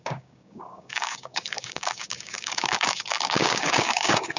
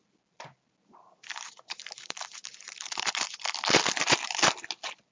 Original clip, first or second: second